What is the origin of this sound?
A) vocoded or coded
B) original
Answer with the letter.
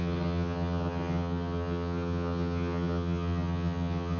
A